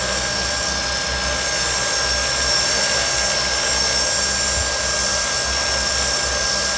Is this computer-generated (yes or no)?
no